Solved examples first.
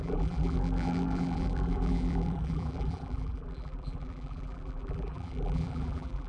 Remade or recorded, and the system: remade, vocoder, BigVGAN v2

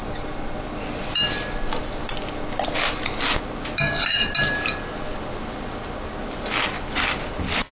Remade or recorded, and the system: recorded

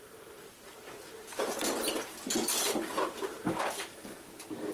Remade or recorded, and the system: remade, vocoder, BigVGAN v2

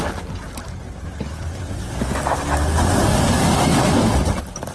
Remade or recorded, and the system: recorded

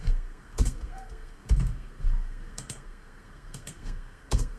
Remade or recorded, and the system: remade, codec, SNAC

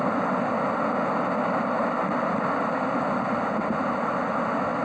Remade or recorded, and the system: recorded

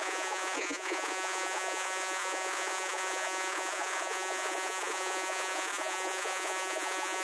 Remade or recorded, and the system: remade, vocoder, Vocos